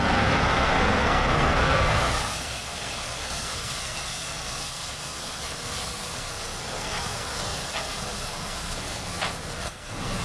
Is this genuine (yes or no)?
no